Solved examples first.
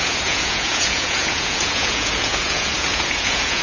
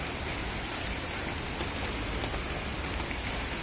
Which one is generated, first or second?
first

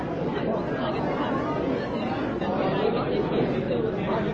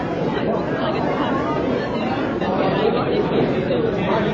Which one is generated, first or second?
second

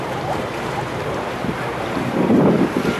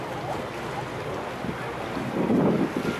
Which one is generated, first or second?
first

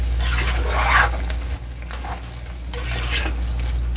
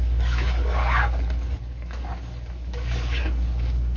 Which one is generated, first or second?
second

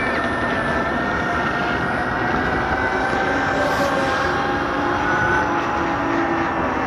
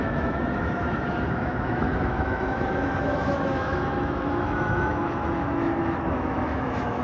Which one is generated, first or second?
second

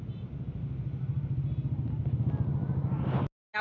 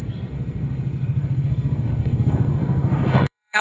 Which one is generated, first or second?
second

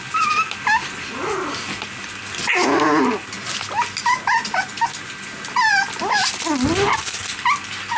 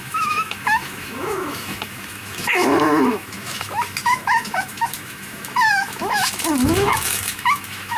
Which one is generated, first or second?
second